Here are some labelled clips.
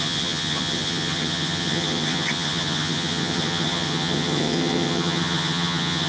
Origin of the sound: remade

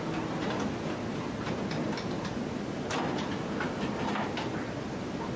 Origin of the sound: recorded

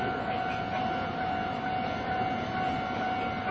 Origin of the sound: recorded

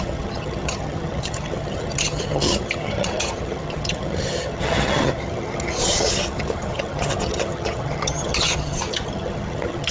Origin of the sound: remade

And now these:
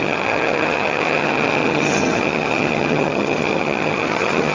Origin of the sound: remade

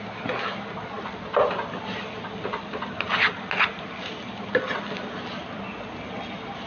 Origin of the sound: recorded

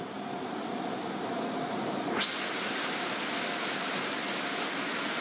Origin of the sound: recorded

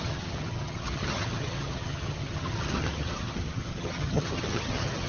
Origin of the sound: remade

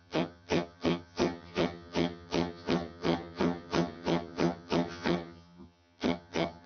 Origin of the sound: remade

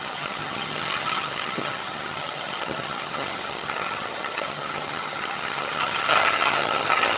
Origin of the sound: remade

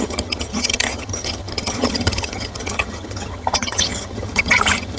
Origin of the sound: remade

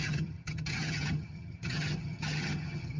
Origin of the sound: remade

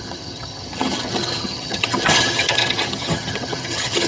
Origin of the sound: remade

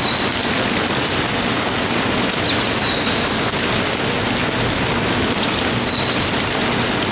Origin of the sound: recorded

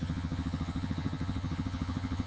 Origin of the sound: remade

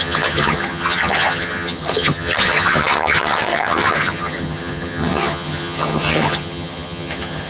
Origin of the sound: remade